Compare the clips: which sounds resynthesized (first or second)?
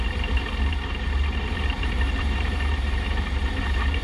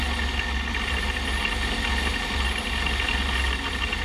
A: first